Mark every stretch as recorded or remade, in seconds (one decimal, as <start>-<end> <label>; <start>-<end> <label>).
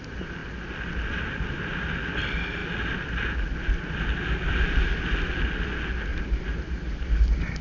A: 0.0-7.6 recorded